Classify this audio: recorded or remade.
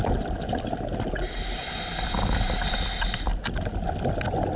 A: recorded